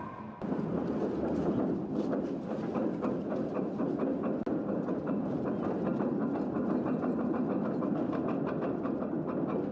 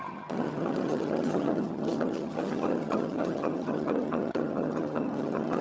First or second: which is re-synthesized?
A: second